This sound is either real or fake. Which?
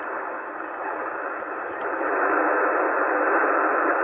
real